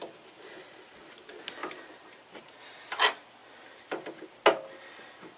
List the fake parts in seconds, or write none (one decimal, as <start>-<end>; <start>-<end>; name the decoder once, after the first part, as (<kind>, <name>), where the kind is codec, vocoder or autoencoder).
none